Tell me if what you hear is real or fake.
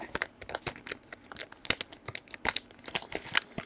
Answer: real